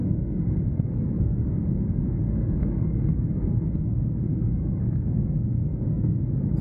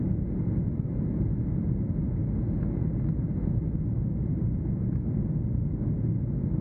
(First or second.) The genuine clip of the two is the second